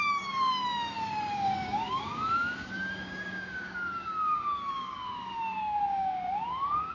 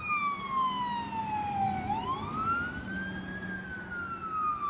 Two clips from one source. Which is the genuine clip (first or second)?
second